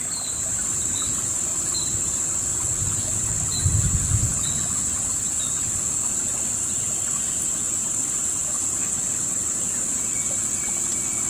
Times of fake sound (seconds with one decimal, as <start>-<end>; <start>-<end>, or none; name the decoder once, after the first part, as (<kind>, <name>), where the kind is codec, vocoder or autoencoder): 1.5-2.3 (vocoder, BigVGAN v2)